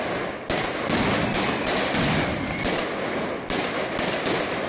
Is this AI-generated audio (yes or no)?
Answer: no